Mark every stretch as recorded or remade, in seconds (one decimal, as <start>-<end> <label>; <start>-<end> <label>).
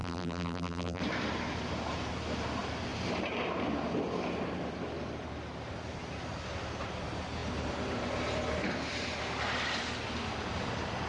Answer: 0.0-1.0 remade; 1.0-11.1 recorded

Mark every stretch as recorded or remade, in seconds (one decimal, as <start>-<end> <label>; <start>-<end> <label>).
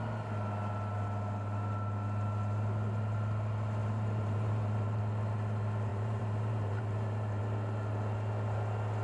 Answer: 0.0-3.8 recorded; 3.8-5.0 remade; 5.0-5.9 recorded; 5.9-7.4 remade; 7.4-9.0 recorded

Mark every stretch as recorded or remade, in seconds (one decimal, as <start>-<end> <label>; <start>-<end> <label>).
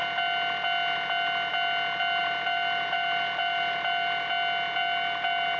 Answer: 0.0-2.2 recorded; 2.2-4.3 remade; 4.3-4.8 recorded; 4.8-5.6 remade